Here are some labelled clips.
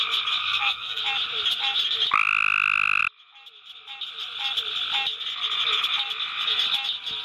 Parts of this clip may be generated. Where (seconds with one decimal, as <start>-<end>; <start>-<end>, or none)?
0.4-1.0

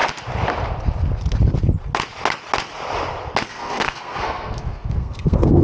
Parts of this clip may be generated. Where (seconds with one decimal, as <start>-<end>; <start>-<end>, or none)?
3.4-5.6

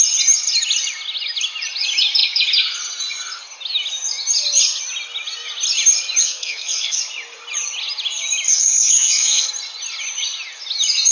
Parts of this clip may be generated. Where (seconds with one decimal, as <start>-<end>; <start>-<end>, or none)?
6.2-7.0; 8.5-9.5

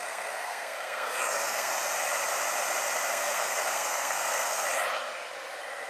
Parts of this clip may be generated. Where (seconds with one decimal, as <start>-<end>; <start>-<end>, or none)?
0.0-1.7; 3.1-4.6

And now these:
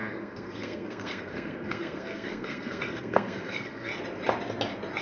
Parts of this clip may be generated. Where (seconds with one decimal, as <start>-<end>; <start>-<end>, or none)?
0.0-3.9

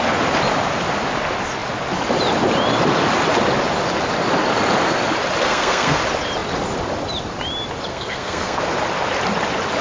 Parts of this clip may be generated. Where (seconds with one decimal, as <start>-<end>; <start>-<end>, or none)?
5.4-6.0; 7.9-8.6

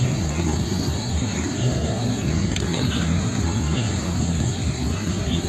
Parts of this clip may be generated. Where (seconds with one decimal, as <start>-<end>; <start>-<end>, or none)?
0.0-5.5

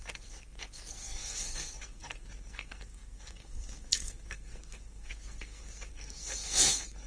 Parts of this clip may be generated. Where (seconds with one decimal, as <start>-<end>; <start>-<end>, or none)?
0.0-7.1